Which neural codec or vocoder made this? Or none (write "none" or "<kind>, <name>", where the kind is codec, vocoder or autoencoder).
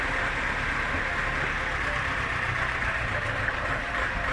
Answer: none